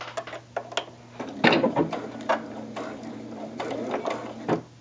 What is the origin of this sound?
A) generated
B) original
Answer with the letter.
B